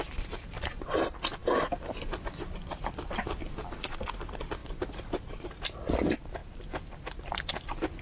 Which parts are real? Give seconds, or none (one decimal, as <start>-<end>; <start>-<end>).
0.0-8.0